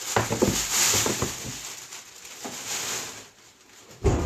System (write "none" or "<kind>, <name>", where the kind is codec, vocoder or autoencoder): none